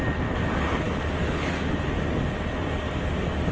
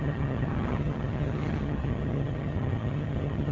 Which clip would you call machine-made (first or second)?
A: second